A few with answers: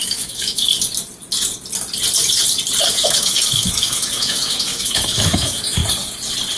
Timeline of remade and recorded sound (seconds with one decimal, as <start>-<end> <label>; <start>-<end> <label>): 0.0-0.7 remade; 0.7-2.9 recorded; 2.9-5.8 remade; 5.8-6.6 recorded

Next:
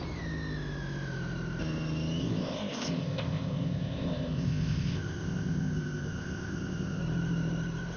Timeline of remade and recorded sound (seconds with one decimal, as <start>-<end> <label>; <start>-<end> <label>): 0.0-2.2 recorded; 2.2-7.0 remade; 7.0-8.0 recorded

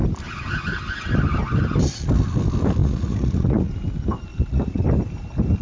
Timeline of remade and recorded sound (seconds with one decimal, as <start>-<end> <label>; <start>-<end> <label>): 0.0-2.8 recorded; 2.8-3.7 remade; 3.7-4.3 recorded; 4.3-4.8 remade; 4.8-5.6 recorded

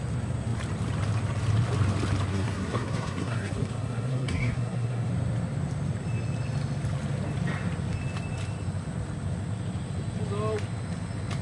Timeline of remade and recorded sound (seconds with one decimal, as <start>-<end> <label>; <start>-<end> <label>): 0.0-2.3 recorded; 2.3-5.1 remade; 5.1-11.4 recorded